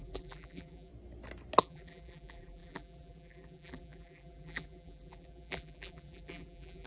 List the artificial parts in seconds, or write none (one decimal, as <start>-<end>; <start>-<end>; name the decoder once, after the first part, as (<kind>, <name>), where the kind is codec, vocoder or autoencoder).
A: 0.0-0.9 (vocoder, BigVGAN v2); 1.6-6.9